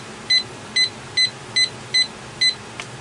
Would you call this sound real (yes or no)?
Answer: yes